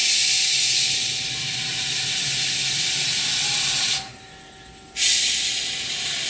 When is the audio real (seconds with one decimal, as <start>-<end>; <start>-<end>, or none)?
0.0-6.3